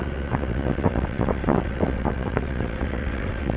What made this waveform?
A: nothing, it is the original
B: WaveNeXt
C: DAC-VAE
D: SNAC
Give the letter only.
B